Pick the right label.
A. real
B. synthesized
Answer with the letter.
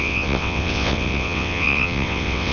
B